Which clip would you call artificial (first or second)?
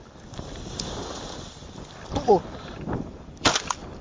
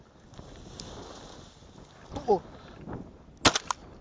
first